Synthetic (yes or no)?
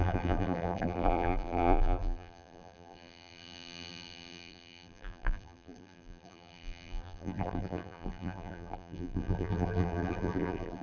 yes